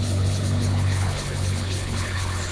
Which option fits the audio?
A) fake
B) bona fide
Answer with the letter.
A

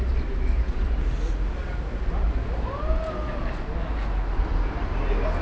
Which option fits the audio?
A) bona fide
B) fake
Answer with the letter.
A